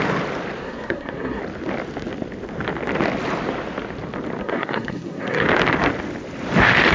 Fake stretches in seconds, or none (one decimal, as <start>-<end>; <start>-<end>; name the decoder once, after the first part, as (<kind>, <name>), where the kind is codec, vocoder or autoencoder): 0.6-1.4 (codec, SNAC); 4.4-5.4

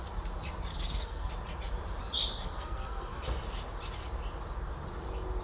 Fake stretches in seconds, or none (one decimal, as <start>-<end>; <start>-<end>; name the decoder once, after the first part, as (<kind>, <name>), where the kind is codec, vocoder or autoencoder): 0.7-1.3 (codec, SNAC); 2.3-3.2

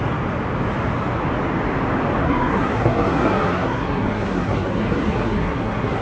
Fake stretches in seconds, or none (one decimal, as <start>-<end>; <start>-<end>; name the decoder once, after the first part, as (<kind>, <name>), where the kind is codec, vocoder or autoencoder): 2.2-6.0 (codec, SNAC)

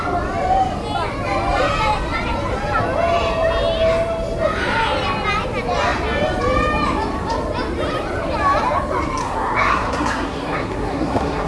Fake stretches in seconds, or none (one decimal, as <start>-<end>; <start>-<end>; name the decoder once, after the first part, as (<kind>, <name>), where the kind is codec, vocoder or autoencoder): 9.2-11.5 (codec, SNAC)

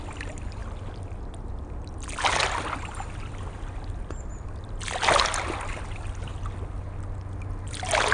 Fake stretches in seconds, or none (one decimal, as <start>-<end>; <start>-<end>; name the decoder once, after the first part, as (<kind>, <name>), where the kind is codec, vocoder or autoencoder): none

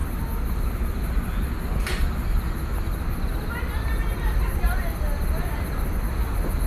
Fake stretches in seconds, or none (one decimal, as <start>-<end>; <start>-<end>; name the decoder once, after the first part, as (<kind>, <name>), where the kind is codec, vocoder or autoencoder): none